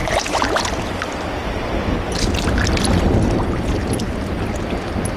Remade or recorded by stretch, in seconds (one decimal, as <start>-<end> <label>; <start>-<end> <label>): 0.0-5.2 recorded